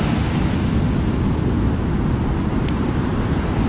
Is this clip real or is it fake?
real